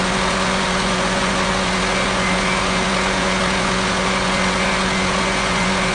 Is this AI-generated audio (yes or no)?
yes